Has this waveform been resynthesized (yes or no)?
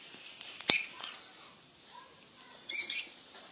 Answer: yes